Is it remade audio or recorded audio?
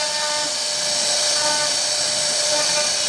recorded